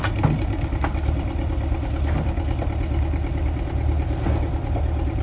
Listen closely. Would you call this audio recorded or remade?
recorded